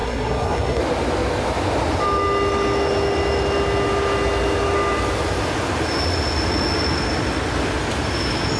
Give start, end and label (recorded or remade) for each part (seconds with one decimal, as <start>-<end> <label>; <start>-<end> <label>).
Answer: 0.0-0.8 remade; 0.8-8.6 recorded